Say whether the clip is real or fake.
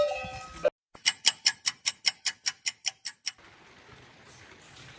real